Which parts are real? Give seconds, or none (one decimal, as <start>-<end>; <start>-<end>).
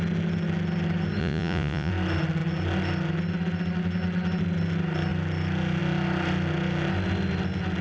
0.0-1.2; 1.9-7.8